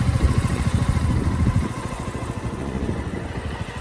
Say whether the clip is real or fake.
fake